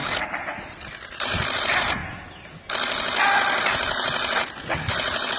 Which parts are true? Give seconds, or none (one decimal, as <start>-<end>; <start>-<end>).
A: 1.6-5.4